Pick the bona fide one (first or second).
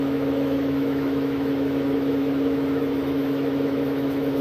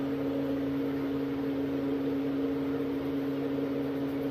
second